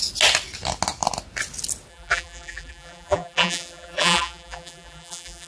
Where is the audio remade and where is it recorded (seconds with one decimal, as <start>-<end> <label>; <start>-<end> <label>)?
0.0-1.9 recorded; 1.9-5.5 remade